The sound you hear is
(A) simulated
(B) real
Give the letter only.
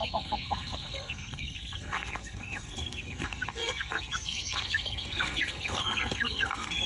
A